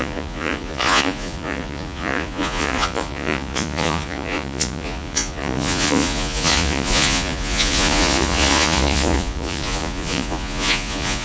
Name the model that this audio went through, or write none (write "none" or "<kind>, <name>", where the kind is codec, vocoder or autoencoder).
vocoder, Vocos